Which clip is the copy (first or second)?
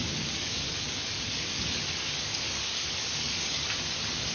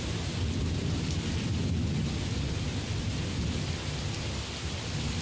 first